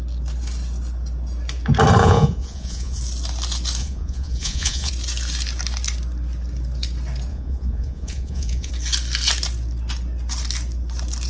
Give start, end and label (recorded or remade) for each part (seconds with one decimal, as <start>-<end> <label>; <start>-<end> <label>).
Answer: 0.0-2.0 recorded; 2.0-3.0 remade; 3.0-3.8 recorded; 3.8-4.9 remade; 4.9-7.3 recorded; 7.3-8.7 remade; 8.7-11.3 recorded